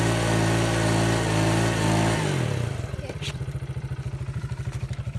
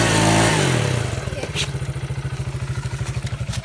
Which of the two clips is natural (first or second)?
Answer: second